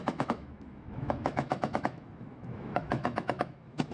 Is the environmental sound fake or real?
fake